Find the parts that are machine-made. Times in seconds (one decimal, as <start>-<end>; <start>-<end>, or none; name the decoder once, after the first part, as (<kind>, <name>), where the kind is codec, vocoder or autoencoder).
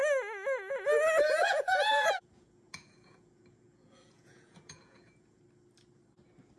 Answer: 1.4-5.4 (vocoder, Vocos)